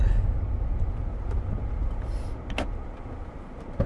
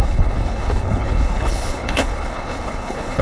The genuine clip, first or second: first